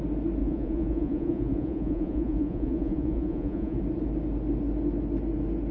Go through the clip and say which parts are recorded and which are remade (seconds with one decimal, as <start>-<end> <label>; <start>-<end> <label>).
0.0-0.4 recorded; 0.4-3.8 remade; 3.8-5.7 recorded